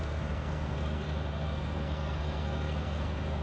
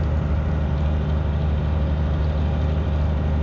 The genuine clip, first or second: second